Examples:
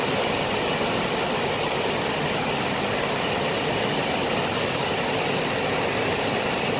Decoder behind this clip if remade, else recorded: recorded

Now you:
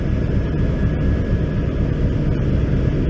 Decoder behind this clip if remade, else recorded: recorded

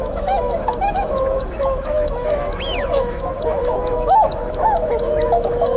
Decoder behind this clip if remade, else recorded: remade, autoencoder, DAC-VAE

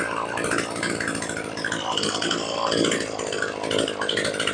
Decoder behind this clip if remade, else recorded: recorded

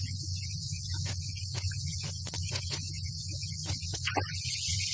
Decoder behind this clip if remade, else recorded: remade, vocoder, Vocos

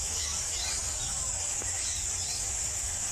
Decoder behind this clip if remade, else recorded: remade, codec, DAC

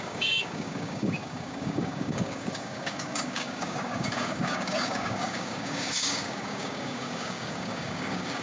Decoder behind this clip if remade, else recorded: remade, codec, DAC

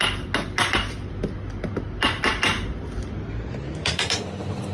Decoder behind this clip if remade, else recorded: recorded